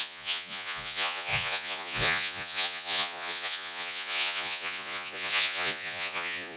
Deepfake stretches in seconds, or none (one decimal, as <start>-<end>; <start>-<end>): 0.0-6.6